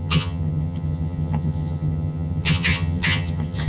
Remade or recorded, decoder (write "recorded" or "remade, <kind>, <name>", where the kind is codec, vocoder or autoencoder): remade, vocoder, HiFi-GAN